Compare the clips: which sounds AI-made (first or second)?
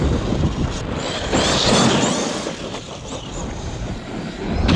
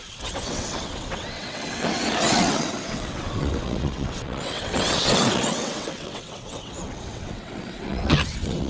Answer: second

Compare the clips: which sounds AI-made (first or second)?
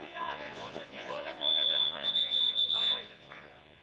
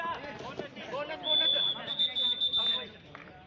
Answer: first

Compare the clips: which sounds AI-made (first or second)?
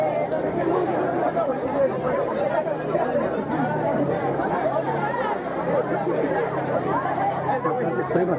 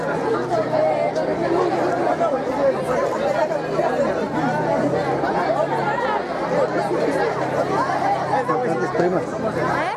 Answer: first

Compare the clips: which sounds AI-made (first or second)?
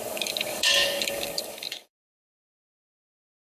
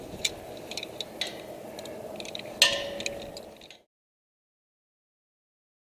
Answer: first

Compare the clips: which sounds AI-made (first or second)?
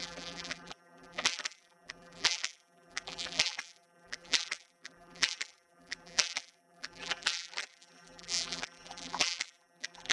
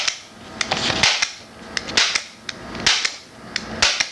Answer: first